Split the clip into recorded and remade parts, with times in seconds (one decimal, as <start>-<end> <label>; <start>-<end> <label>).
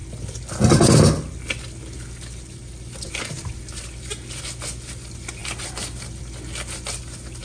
0.0-7.4 recorded